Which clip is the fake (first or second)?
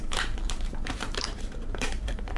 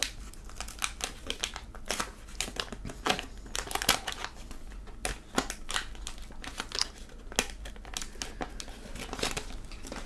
first